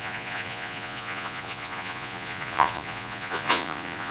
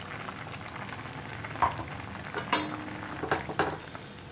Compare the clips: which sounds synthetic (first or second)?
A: first